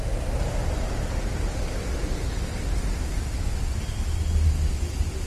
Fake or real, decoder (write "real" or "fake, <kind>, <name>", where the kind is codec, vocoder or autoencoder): real